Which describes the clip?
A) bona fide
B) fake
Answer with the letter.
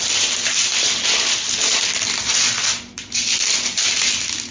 A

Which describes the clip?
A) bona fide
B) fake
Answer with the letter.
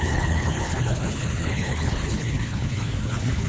B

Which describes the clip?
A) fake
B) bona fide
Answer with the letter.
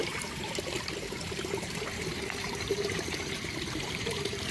A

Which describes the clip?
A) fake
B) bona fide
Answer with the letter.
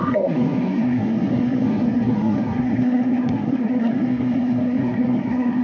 A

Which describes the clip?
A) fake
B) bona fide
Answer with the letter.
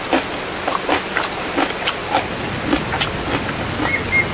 B